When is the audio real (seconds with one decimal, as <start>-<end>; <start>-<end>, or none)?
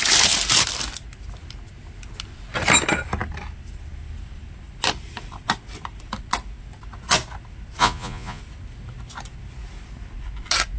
0.0-7.8; 8.4-10.8